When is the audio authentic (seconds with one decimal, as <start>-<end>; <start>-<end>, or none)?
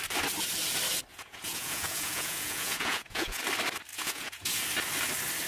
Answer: 0.0-1.1; 3.4-3.9; 4.6-5.5